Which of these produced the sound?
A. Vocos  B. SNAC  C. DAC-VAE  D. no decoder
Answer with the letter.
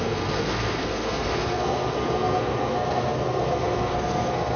B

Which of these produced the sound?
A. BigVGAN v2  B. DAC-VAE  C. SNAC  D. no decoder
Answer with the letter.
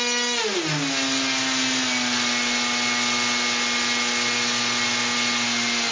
D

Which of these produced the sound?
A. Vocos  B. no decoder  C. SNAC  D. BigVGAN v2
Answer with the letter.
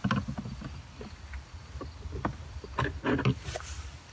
B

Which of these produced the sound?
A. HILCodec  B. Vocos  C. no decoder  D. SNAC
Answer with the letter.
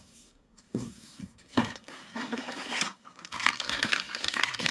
D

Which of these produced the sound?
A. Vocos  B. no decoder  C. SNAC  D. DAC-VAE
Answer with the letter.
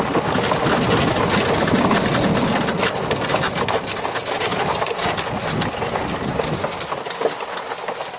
B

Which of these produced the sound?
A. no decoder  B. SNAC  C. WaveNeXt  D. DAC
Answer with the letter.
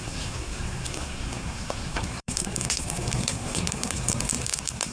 B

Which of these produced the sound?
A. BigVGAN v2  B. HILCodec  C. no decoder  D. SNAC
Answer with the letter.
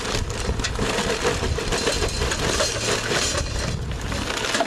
C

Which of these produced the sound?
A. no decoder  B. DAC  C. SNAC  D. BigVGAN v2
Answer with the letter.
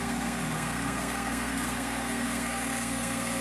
C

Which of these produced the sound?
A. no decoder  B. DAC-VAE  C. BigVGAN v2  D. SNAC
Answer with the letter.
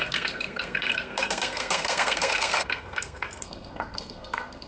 D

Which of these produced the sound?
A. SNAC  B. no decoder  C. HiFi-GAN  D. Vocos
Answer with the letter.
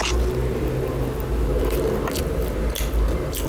B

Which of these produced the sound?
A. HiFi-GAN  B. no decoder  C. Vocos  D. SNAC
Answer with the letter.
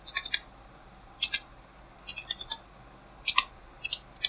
B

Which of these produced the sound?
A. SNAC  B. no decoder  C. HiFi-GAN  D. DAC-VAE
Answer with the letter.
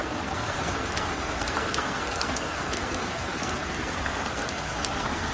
A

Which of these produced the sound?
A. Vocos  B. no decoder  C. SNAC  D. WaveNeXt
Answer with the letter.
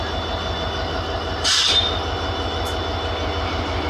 B